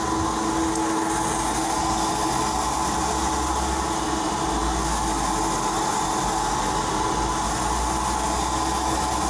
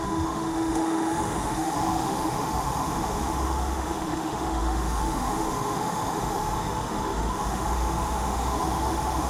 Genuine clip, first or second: first